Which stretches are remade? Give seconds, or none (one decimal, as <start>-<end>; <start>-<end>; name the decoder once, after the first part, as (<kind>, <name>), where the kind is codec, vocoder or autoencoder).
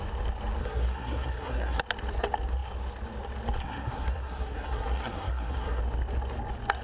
0.6-1.8 (codec, SNAC); 3.6-5.8